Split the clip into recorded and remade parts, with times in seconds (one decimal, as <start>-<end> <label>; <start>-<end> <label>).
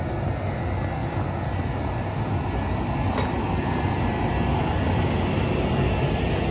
0.0-6.5 recorded